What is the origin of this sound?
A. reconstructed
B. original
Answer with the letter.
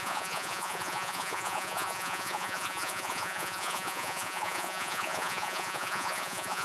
A